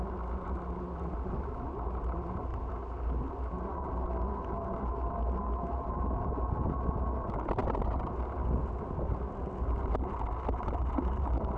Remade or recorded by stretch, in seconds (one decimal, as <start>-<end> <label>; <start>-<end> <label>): 0.0-11.6 recorded